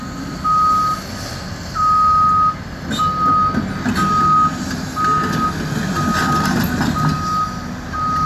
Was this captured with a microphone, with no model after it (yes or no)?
yes